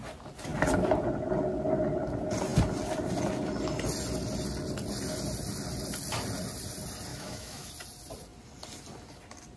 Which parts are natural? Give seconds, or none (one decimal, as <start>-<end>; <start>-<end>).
0.0-7.1; 7.7-9.6